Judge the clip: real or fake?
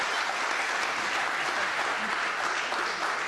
real